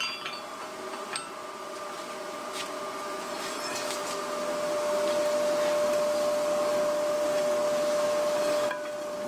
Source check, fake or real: real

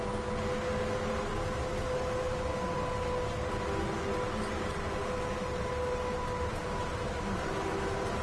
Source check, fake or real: real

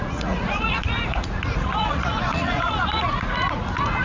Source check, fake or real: fake